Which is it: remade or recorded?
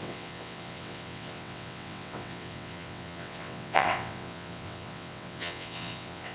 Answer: remade